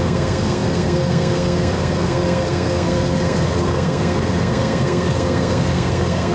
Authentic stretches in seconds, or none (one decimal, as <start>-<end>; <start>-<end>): none